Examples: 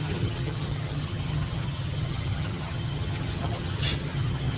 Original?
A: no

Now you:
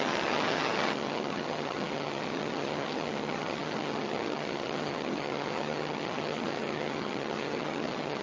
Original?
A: no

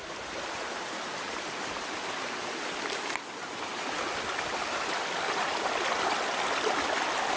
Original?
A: yes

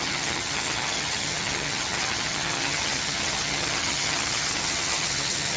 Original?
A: no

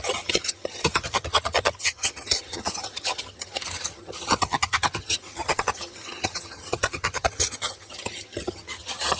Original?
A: no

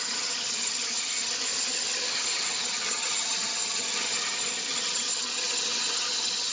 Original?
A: no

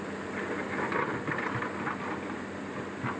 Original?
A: yes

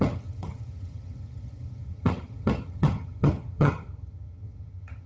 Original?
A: no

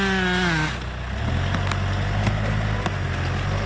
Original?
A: yes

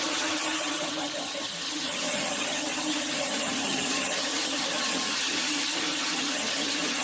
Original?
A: no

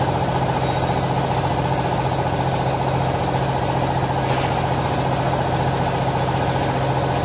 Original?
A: yes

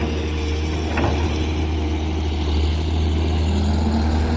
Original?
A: yes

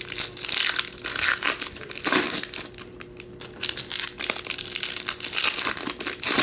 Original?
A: yes